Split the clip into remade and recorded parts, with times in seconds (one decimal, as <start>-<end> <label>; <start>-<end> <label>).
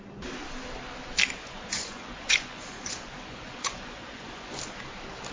0.0-1.4 recorded; 1.4-4.6 remade; 4.6-5.3 recorded